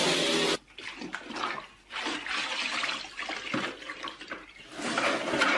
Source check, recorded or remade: recorded